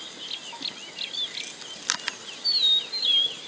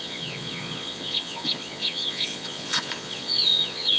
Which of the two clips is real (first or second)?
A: first